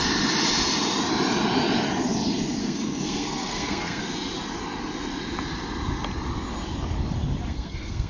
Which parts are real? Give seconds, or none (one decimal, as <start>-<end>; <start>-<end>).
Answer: 0.0-2.6; 4.0-7.5